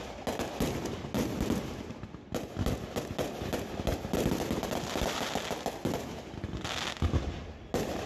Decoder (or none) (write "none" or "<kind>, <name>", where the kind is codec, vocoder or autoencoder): none